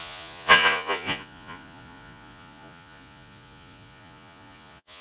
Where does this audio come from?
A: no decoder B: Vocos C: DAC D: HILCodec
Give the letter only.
B